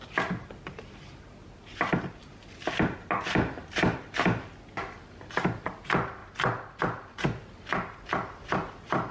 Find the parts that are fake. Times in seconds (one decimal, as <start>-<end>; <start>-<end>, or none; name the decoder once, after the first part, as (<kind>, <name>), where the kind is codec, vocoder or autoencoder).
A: 3.6-4.1 (vocoder, BigVGAN v2); 6.2-6.8